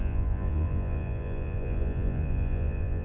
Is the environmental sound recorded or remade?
remade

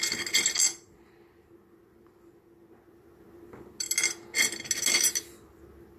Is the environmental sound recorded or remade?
recorded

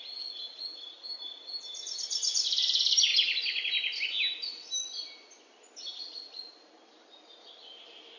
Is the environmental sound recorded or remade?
recorded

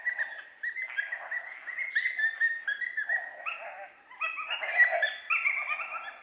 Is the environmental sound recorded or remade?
recorded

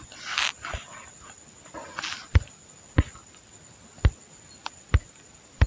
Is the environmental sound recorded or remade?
recorded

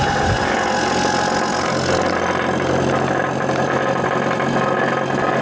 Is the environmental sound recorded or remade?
recorded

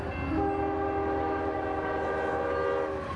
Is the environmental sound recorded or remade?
recorded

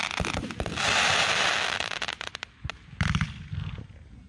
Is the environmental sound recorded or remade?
recorded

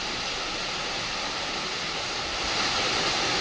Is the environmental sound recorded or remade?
recorded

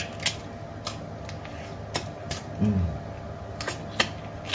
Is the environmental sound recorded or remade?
recorded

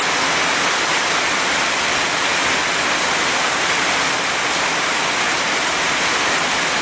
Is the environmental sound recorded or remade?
recorded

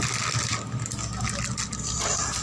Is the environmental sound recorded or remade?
recorded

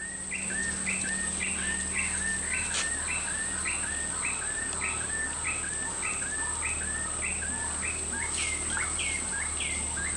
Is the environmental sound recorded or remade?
recorded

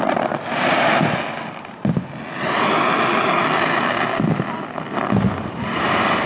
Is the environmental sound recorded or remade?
recorded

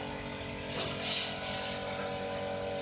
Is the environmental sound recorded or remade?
recorded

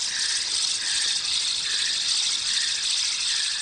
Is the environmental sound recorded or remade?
recorded